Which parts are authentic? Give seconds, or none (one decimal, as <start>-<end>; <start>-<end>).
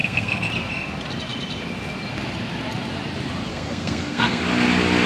0.5-3.5; 4.4-5.1